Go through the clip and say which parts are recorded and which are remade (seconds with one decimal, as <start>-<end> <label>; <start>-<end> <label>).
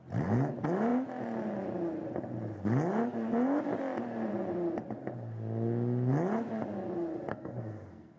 0.0-7.3 recorded; 7.3-8.2 remade